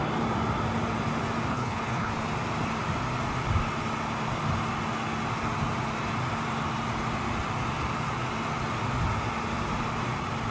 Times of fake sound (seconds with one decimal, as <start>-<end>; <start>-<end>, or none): 1.5-2.1